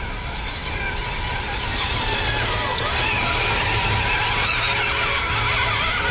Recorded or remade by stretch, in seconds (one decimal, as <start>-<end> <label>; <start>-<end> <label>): 0.0-6.1 recorded